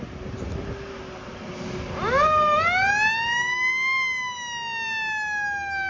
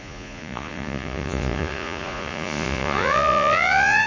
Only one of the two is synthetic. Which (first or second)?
second